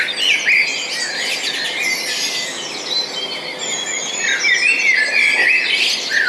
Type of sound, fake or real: real